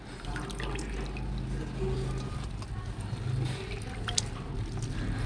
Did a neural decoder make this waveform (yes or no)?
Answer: no